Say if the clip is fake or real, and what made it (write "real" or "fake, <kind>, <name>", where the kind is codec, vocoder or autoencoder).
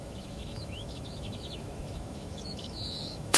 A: fake, autoencoder, DAC-VAE